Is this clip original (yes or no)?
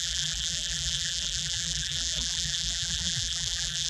no